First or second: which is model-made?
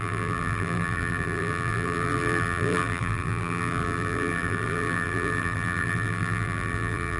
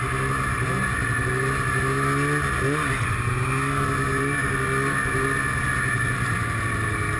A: first